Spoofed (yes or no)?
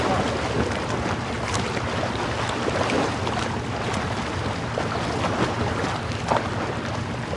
no